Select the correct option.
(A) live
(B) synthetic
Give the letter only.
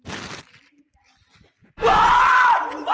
A